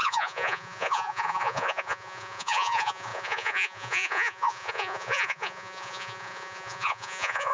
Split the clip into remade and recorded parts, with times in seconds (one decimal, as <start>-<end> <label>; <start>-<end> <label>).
0.0-7.5 remade